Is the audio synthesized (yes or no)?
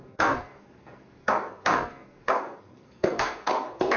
yes